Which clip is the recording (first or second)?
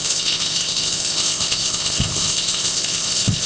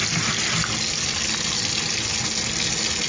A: second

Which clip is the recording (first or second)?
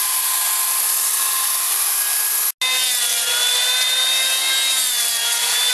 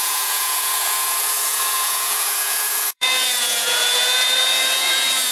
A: first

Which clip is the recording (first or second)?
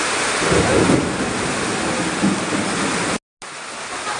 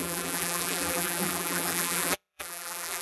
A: first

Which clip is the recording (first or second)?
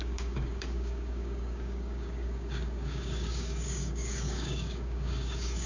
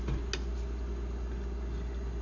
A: second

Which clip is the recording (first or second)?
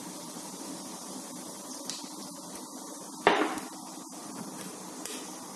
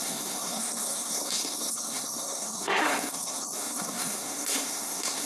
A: first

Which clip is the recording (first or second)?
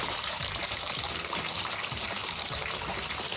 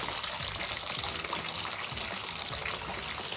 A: second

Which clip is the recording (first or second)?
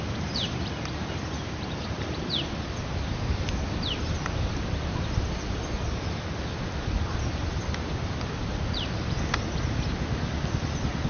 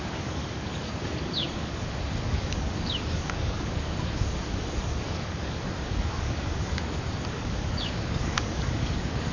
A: first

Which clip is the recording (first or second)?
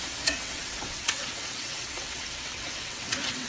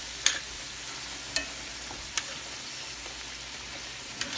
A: second